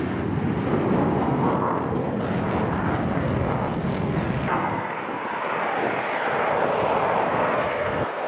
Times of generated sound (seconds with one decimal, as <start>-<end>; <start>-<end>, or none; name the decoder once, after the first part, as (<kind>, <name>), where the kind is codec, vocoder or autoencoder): 1.0-2.2 (codec, SNAC); 3.9-4.9; 7.2-8.3